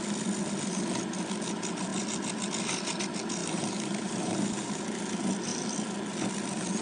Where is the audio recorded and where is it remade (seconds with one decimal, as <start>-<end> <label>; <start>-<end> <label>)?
0.0-3.4 recorded; 3.4-4.8 remade; 4.8-6.8 recorded

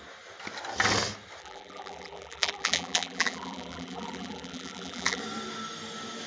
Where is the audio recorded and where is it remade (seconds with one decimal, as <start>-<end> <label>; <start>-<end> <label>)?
0.0-1.4 recorded; 1.4-5.2 remade; 5.2-6.3 recorded

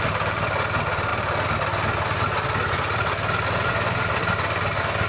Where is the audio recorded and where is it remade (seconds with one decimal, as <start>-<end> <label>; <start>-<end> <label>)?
0.0-5.1 recorded

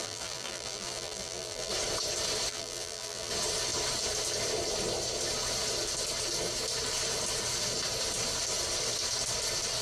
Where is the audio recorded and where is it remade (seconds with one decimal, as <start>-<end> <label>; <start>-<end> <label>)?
0.0-1.7 remade; 1.7-2.5 recorded; 2.5-3.3 remade; 3.3-9.8 recorded

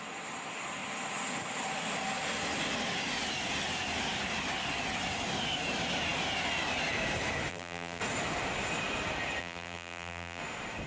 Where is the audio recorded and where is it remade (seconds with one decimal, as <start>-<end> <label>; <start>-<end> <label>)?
0.0-7.5 recorded; 7.5-8.0 remade; 8.0-9.4 recorded; 9.4-10.4 remade; 10.4-10.9 recorded